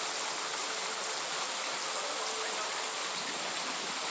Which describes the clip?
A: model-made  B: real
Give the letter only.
B